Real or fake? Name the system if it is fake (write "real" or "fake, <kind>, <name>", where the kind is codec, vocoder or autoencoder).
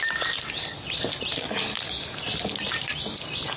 real